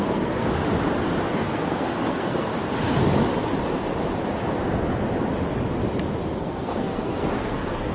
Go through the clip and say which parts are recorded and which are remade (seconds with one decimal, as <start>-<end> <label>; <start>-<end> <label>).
0.0-0.5 remade; 0.5-1.3 recorded; 1.3-2.5 remade; 2.5-6.4 recorded; 6.4-7.9 remade